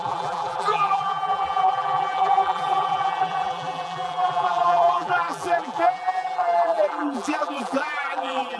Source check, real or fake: fake